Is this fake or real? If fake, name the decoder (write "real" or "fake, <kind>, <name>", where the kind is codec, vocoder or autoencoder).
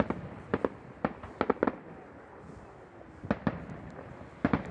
real